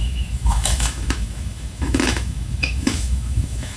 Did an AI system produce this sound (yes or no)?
yes